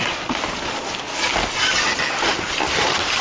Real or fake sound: real